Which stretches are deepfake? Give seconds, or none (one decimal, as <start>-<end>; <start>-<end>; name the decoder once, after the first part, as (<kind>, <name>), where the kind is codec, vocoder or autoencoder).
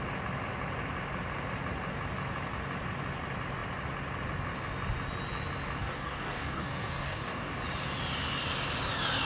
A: 5.8-7.5 (codec, DAC)